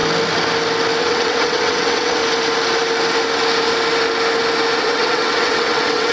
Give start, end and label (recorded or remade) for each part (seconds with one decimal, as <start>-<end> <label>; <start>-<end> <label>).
0.0-1.0 recorded; 1.0-2.2 remade; 2.2-4.8 recorded; 4.8-6.1 remade